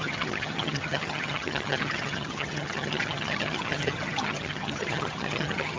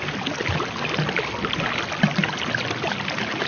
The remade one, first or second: first